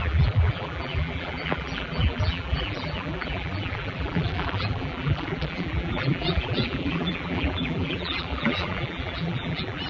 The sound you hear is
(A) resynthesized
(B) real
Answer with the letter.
A